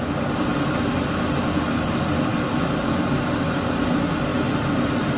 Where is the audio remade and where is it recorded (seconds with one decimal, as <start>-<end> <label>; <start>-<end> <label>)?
0.0-5.2 recorded